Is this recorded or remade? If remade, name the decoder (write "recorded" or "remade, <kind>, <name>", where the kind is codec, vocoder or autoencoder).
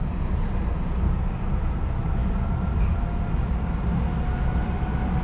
recorded